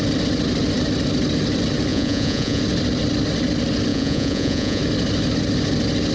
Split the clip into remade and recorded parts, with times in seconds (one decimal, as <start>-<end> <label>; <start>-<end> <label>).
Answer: 0.0-1.9 recorded; 1.9-2.6 remade; 2.6-3.9 recorded; 3.9-4.8 remade; 4.8-6.1 recorded